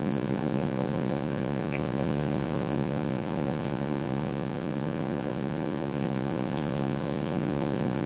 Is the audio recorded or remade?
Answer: remade